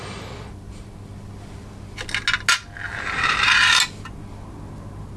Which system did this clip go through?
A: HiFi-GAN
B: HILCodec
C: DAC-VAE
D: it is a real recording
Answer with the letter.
D